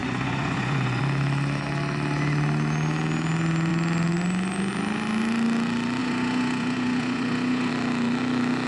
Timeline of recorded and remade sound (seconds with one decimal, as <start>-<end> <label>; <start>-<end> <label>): 0.0-1.0 remade; 1.0-6.0 recorded; 6.0-7.7 remade; 7.7-8.7 recorded